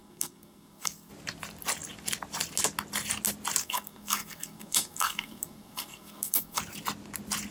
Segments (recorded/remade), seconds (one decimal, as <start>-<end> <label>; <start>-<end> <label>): 0.0-1.1 remade; 1.1-3.6 recorded; 3.6-6.6 remade; 6.6-7.5 recorded